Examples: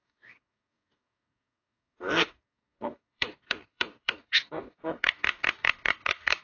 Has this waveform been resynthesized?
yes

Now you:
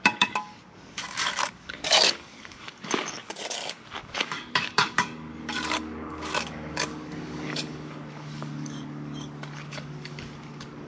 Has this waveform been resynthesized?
yes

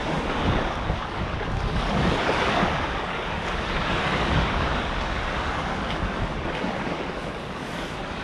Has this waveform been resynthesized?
yes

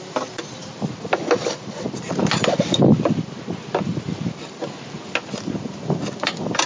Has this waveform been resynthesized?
no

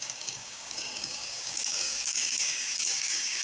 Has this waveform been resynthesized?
yes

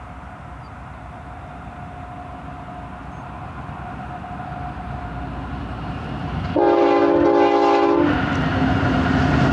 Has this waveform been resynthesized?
no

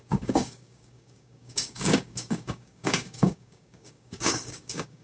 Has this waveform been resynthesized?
yes